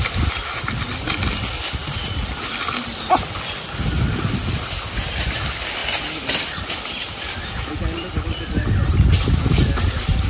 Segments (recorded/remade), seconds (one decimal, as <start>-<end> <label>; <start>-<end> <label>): 0.0-10.3 recorded